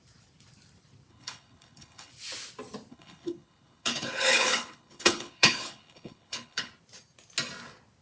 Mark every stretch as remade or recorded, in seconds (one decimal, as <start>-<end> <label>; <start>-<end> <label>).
0.0-1.1 recorded; 1.1-2.1 remade; 2.1-2.9 recorded; 2.9-6.7 remade; 6.7-8.0 recorded